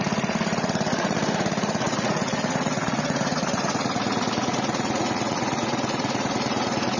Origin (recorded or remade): remade